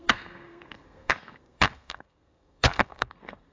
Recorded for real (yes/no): no